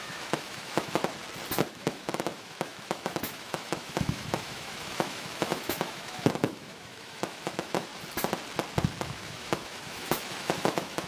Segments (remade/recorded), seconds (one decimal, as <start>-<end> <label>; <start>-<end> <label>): 0.0-1.0 remade; 1.0-1.7 recorded; 1.7-7.9 remade; 7.9-9.0 recorded; 9.0-11.1 remade